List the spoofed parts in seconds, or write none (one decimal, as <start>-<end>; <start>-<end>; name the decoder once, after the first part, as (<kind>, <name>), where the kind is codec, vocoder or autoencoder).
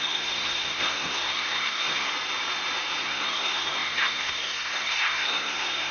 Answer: 0.0-2.1 (codec, SNAC); 3.0-5.9